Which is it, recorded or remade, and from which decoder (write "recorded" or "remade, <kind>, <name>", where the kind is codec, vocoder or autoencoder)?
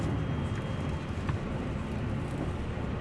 recorded